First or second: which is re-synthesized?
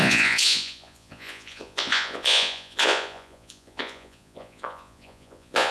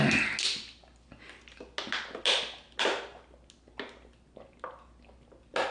first